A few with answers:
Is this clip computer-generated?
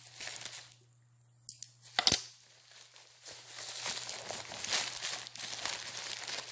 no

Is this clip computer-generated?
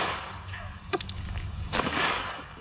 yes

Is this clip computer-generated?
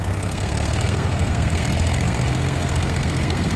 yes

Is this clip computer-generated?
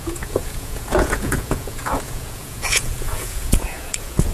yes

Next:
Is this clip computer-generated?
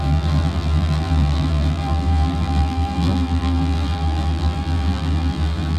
yes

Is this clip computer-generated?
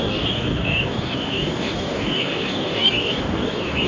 yes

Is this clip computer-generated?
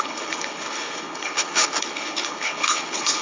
yes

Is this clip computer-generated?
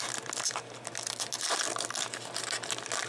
no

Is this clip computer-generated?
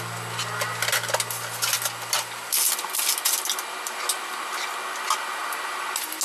no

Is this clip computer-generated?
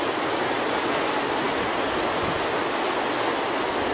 no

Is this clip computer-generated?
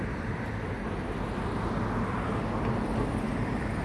no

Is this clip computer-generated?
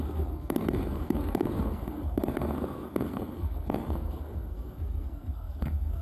yes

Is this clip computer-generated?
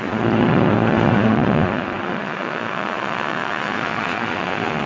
yes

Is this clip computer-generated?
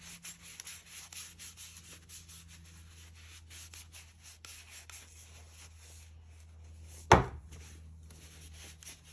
no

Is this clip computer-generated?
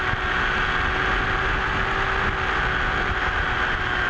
no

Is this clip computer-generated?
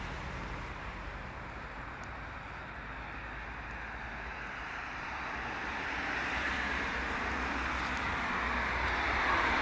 no